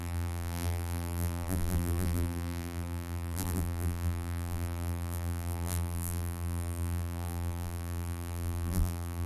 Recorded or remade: remade